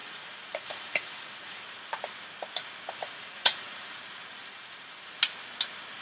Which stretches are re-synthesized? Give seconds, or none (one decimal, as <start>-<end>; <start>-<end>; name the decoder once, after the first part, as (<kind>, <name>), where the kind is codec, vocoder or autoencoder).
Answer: 0.0-1.6 (vocoder, Vocos); 3.0-4.0; 4.4-5.2